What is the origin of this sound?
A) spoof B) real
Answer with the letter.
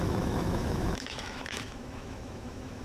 A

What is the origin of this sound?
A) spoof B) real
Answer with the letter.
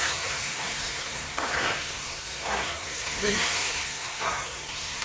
A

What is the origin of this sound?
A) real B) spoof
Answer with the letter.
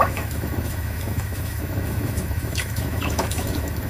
B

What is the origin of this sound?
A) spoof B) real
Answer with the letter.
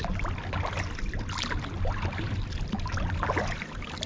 B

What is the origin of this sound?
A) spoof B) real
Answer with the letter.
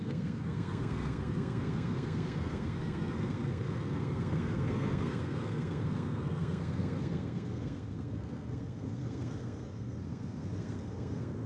A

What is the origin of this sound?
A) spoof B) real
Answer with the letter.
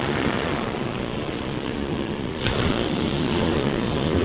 A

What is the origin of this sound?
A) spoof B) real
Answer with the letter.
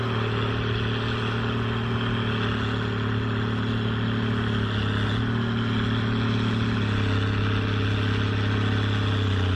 B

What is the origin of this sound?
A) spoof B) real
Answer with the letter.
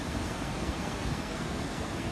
A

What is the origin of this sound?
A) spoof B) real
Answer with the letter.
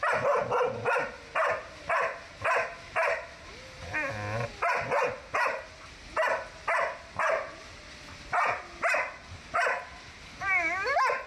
B